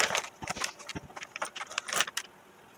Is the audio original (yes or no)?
yes